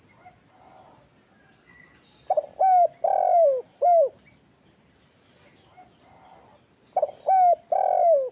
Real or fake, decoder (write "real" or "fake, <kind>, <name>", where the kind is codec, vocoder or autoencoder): real